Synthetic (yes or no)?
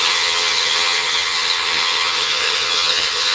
yes